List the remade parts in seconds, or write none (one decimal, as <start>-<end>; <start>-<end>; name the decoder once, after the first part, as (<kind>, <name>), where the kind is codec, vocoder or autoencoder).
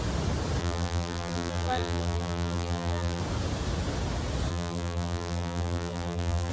0.6-3.2 (vocoder, BigVGAN v2); 4.5-6.5